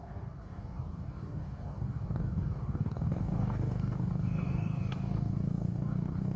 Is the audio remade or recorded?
remade